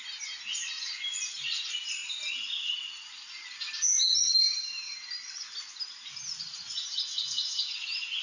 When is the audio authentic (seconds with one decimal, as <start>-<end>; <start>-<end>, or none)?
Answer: 0.0-8.2

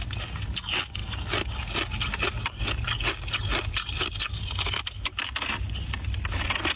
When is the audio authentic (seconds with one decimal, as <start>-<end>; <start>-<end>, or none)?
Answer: 0.0-6.8

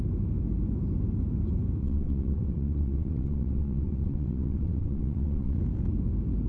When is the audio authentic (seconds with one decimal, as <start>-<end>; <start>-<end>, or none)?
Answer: 0.0-1.8; 5.6-6.5

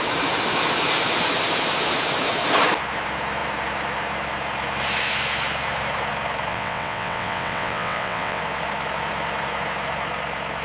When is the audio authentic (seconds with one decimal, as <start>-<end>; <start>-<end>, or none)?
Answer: 0.0-6.5; 8.4-10.6